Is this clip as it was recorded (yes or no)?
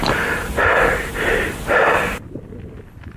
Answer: yes